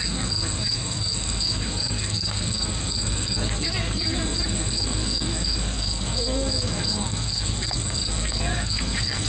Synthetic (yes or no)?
yes